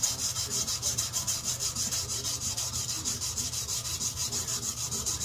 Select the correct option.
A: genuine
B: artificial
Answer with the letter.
B